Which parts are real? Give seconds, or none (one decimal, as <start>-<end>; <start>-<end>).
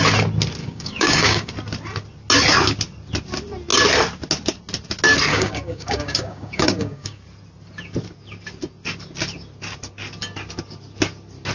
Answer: 0.0-0.6; 1.5-5.3; 7.2-11.5